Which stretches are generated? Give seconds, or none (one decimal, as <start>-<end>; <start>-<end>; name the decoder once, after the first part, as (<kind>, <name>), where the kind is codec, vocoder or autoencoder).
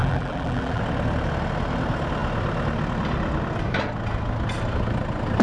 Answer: 0.0-0.8 (vocoder, BigVGAN v2)